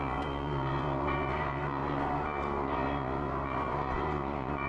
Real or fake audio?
fake